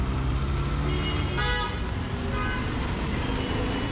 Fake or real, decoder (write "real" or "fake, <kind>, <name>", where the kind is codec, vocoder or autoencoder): real